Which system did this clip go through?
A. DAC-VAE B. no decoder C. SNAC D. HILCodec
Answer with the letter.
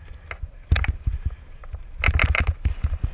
B